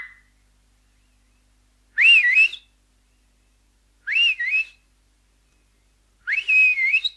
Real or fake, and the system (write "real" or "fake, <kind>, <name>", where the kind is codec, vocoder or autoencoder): real